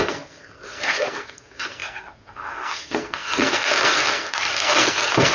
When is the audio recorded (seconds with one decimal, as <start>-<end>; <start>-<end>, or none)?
none